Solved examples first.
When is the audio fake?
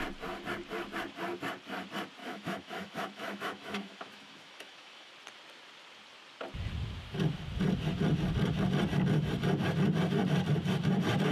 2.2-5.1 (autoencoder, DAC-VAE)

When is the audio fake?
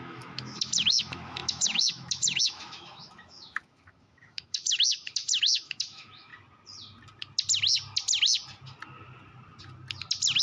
0.0-6.3 (autoencoder, DAC-VAE)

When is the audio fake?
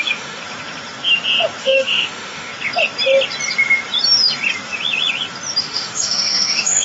0.0-0.4 (autoencoder, DAC-VAE); 1.6-2.5; 5.6-6.8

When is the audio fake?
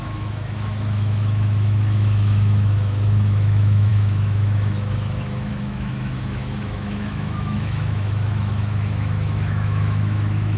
0.0-10.6 (autoencoder, DAC-VAE)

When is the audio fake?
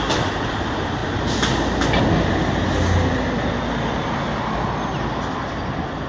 none